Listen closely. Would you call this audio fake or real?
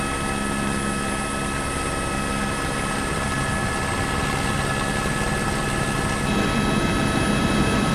real